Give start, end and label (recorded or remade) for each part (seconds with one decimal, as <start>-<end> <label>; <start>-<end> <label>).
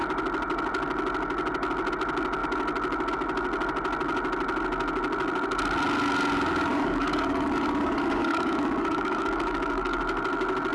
0.0-6.7 recorded; 6.7-10.0 remade; 10.0-10.7 recorded